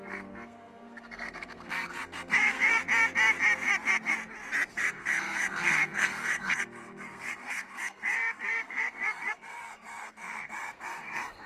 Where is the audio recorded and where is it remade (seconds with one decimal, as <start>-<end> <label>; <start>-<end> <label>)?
0.0-2.8 remade; 2.8-4.7 recorded; 4.7-11.5 remade